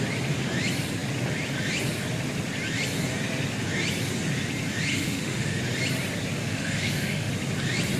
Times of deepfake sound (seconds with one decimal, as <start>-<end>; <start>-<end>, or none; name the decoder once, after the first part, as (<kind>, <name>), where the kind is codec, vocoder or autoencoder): 4.9-5.6 (autoencoder, DAC-VAE); 6.4-7.3